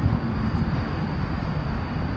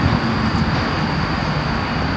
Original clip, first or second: second